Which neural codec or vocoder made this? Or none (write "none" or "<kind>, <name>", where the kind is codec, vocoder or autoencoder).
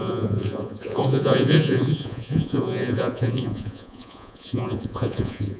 vocoder, Vocos